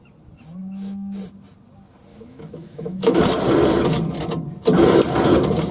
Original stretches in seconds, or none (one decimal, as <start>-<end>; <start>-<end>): 0.0-0.6; 1.2-2.1; 3.2-5.7